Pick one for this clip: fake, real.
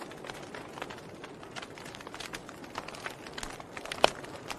real